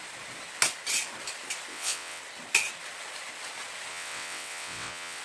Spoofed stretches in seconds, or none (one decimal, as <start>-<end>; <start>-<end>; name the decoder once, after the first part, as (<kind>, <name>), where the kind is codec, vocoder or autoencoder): 1.7-2.2 (vocoder, WaveNeXt); 3.9-5.2